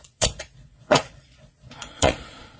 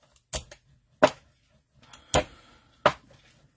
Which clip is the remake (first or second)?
first